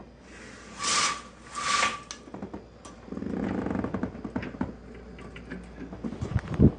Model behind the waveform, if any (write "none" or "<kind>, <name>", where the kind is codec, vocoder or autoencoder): none